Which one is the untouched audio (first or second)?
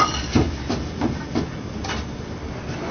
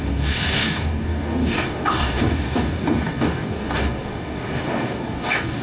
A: first